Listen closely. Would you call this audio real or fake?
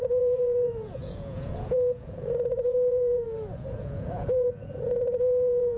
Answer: fake